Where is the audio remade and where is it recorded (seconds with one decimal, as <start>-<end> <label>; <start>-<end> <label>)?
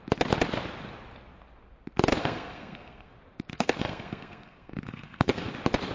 0.0-2.2 recorded; 2.2-3.1 remade; 3.1-3.5 recorded; 3.5-5.5 remade; 5.5-5.9 recorded